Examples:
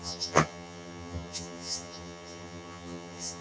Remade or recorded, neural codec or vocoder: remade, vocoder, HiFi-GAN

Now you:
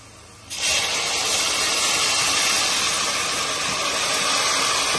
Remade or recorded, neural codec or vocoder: recorded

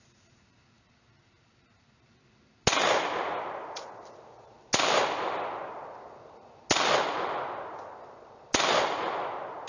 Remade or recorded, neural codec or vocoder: recorded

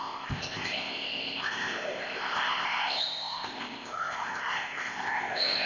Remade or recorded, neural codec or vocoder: remade, codec, ZipCodec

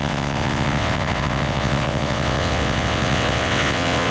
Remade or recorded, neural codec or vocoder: remade, vocoder, WaveNeXt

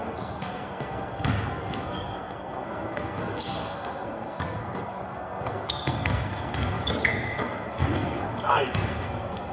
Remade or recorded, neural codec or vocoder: remade, codec, SNAC